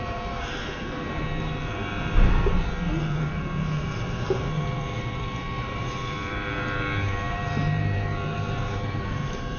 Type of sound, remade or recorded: remade